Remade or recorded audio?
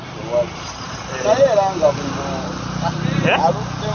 recorded